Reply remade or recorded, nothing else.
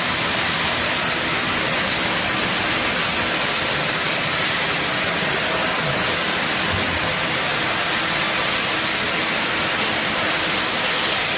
recorded